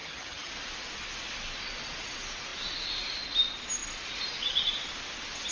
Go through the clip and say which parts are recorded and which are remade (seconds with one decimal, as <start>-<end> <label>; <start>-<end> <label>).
0.0-0.5 remade; 0.5-5.5 recorded

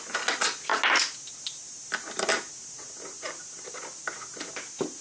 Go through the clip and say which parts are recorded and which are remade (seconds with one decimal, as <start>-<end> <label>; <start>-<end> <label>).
0.0-5.0 recorded

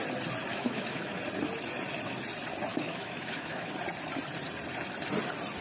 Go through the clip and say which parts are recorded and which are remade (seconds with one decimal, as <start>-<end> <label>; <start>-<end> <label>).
0.0-0.5 recorded; 0.5-1.2 remade; 1.2-2.7 recorded; 2.7-3.7 remade; 3.7-5.6 recorded

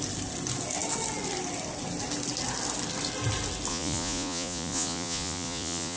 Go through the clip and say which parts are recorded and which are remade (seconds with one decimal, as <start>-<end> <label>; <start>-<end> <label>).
0.0-3.7 recorded; 3.7-6.0 remade

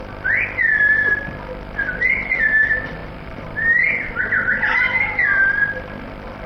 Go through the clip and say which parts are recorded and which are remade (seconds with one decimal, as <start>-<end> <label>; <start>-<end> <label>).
0.0-3.0 recorded; 3.0-4.2 remade; 4.2-6.5 recorded

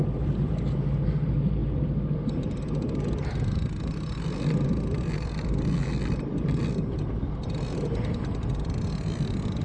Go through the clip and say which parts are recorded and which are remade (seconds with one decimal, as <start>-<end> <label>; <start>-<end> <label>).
0.0-9.6 recorded